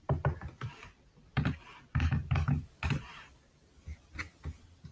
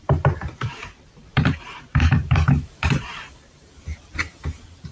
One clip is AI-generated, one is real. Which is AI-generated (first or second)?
second